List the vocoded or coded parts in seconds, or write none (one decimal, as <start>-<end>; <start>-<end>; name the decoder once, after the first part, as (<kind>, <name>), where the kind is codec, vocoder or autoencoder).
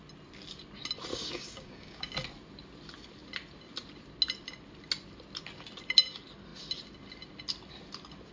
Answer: 1.1-2.1 (codec, DAC)